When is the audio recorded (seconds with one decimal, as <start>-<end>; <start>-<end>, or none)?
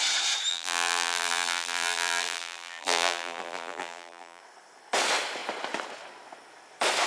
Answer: 0.0-0.5; 4.4-7.1